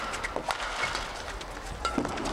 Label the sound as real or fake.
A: real